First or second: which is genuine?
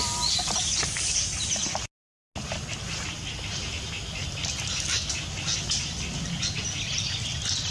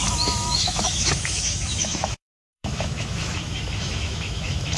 first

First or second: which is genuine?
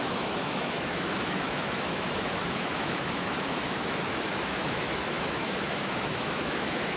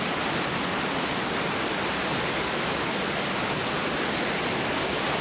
second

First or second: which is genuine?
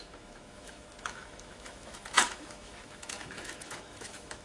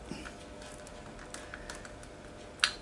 second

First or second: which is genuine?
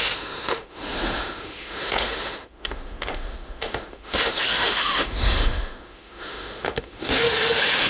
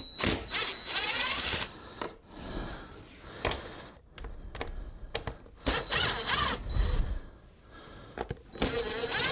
second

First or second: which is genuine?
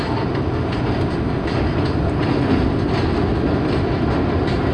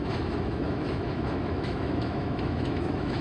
first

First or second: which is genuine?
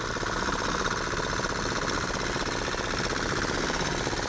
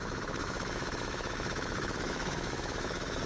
first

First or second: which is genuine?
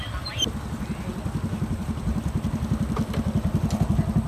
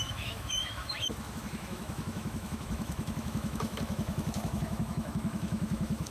first